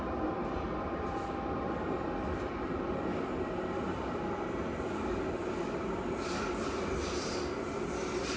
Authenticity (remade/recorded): recorded